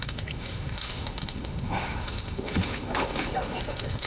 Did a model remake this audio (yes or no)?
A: yes